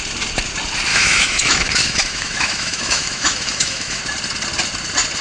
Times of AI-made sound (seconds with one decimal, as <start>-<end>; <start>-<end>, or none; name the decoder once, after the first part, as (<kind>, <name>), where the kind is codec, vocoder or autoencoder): 0.9-4.0 (autoencoder, DAC-VAE)